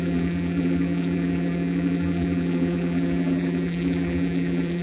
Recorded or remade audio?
remade